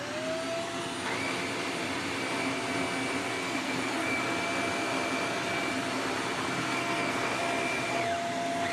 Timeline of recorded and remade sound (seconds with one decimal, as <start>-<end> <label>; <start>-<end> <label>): 0.0-3.2 recorded; 3.2-4.2 remade; 4.2-6.6 recorded; 6.6-7.4 remade; 7.4-8.7 recorded